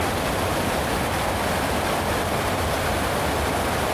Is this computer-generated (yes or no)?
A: no